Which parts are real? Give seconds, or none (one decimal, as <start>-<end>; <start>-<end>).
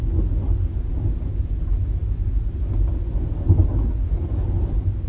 0.0-5.1